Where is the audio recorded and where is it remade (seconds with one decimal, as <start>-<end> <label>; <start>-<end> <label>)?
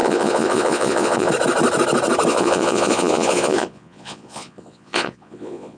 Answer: 0.0-1.3 remade; 1.3-2.3 recorded; 2.3-5.8 remade